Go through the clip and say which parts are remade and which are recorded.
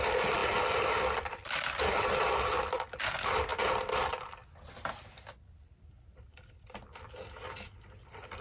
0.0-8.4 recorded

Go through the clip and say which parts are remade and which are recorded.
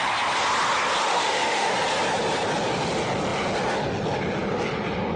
0.0-1.0 recorded; 1.0-1.7 remade; 1.7-5.2 recorded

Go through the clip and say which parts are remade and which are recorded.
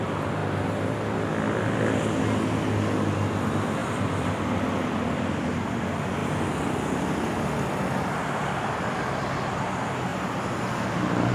0.0-3.8 recorded; 3.8-5.1 remade; 5.1-11.3 recorded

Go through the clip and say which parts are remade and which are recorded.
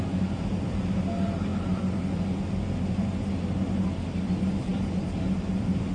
0.0-5.9 recorded